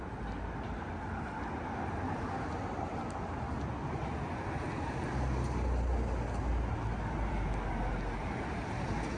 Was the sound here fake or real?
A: real